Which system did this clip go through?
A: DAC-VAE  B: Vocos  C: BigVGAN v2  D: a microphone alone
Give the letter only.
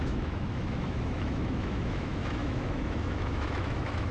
A